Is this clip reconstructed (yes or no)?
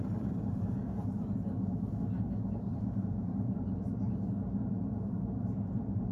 yes